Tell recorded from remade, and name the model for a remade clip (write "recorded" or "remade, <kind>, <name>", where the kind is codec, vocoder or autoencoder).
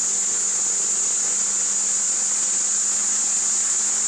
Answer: recorded